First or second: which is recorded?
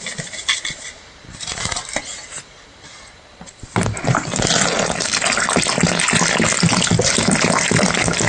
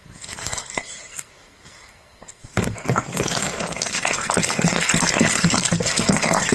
first